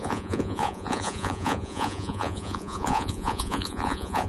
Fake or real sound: fake